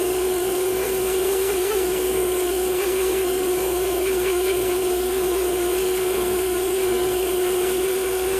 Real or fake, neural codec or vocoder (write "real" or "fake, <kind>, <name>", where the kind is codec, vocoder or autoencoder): fake, codec, SNAC